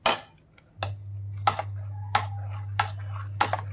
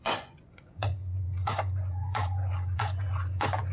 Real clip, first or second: first